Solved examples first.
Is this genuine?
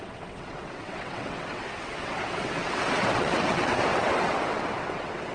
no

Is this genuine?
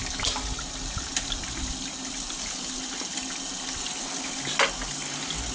yes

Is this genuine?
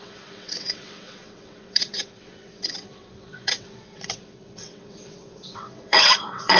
no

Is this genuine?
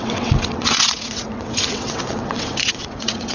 no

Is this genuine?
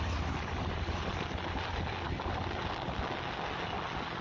yes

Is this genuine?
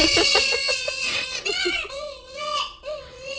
no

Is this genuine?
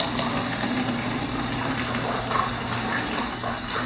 yes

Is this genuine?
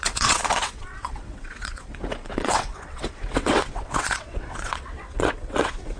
no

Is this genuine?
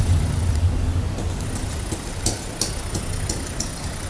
yes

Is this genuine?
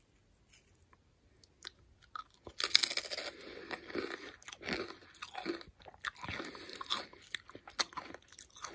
yes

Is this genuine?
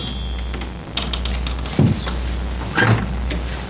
yes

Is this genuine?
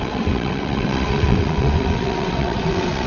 no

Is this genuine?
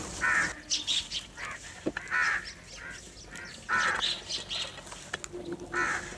yes